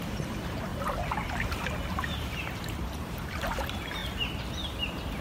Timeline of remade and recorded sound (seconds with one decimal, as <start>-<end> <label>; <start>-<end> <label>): 0.0-0.7 recorded; 0.7-3.4 remade; 3.4-5.2 recorded